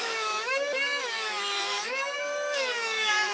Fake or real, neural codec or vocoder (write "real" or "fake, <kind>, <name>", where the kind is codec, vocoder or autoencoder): fake, autoencoder, DAC-VAE